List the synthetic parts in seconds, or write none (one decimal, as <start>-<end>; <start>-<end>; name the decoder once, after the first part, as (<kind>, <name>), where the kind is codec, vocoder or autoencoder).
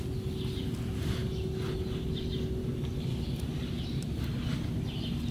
none